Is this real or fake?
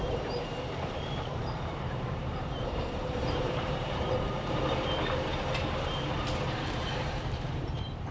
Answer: fake